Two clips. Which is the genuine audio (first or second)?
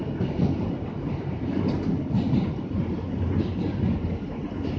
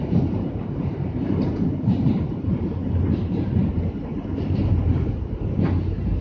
first